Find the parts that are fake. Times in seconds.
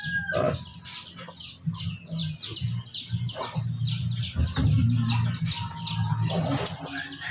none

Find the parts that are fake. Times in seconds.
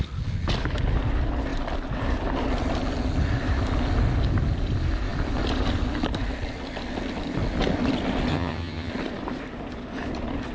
8.3-8.9 (vocoder, HiFi-GAN)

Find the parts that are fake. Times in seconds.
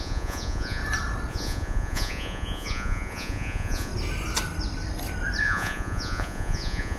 0.0-0.8 (vocoder, Vocos); 1.3-3.9; 5.4-7.0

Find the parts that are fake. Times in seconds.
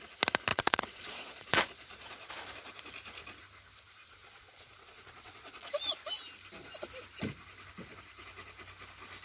0.5-2.3 (vocoder, Vocos); 4.0-5.7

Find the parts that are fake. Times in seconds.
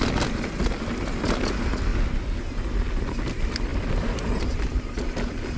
none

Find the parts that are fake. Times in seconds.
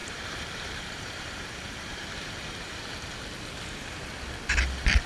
0.0-2.8 (vocoder, BigVGAN v2)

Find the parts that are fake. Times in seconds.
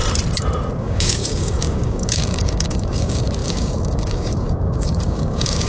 0.8-5.7 (codec, DAC)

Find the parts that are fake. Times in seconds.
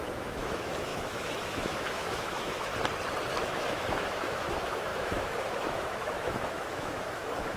0.0-2.7 (autoencoder, DAC-VAE); 3.5-7.6